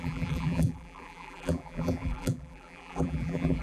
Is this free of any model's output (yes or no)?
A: no